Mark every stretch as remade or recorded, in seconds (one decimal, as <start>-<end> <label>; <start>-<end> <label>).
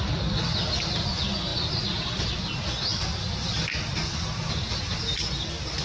0.0-5.8 recorded